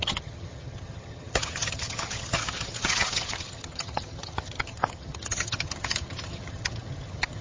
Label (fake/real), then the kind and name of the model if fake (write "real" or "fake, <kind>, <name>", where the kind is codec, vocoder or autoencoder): fake, vocoder, HiFi-GAN